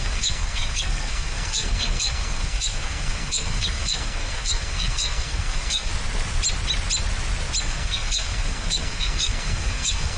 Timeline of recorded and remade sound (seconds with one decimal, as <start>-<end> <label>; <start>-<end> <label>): 0.0-5.9 remade; 5.9-7.6 recorded; 7.6-10.2 remade